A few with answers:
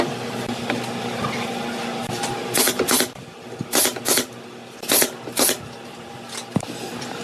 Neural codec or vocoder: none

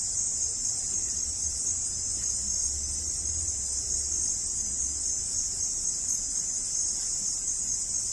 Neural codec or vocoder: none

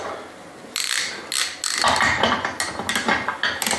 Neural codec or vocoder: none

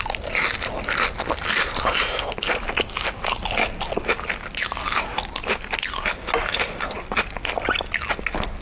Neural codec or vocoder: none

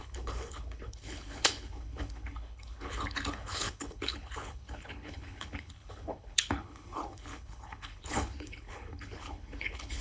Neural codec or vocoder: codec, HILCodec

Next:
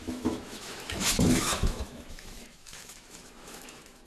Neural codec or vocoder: autoencoder, DAC-VAE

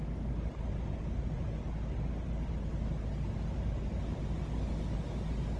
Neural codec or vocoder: none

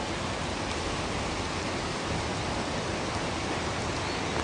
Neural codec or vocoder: none